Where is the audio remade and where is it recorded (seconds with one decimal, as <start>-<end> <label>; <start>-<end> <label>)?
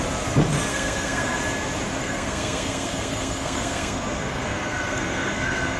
0.0-0.7 recorded; 0.7-1.4 remade; 1.4-2.0 recorded; 2.0-5.8 remade